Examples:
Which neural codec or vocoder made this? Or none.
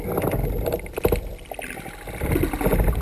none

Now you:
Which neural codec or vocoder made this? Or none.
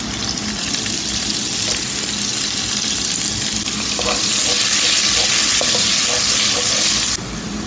none